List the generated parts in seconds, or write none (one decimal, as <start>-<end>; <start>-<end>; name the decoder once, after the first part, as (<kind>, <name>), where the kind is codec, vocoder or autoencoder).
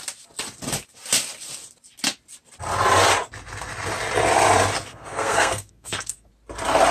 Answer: 4.9-6.3 (codec, SNAC)